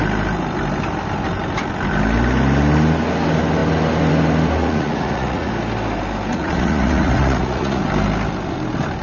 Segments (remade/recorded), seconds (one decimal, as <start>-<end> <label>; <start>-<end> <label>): 0.0-4.6 recorded; 4.6-5.5 remade; 5.5-6.3 recorded; 6.3-7.8 remade; 7.8-9.0 recorded